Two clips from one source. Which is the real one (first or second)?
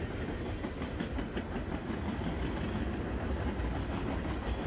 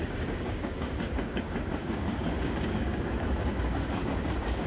first